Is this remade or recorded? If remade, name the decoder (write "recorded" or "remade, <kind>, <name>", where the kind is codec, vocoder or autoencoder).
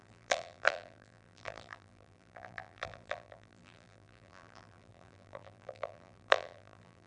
remade, vocoder, BigVGAN v2